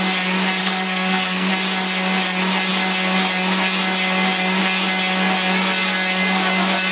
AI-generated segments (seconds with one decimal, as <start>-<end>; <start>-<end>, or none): 0.6-1.5

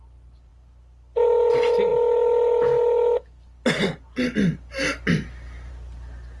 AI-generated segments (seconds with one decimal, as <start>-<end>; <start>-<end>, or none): none

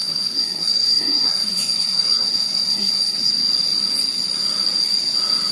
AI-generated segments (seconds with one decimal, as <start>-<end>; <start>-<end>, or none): 0.0-3.3

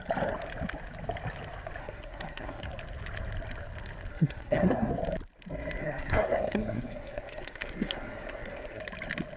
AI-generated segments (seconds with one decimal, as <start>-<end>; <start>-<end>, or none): 1.8-2.7; 4.1-4.9; 5.8-8.8

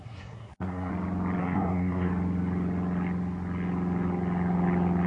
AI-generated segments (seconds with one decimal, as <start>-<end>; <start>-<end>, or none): 0.0-0.9; 1.4-2.1

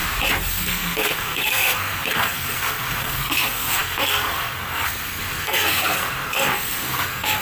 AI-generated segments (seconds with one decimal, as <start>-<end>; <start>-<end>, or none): 0.5-7.4